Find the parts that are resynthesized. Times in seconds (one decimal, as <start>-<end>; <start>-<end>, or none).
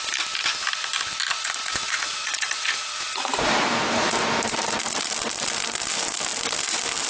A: 1.6-3.7